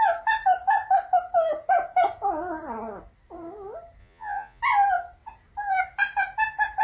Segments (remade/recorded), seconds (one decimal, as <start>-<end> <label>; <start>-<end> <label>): 0.0-4.0 recorded; 4.0-4.6 remade; 4.6-6.8 recorded